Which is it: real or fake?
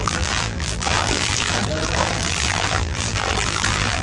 fake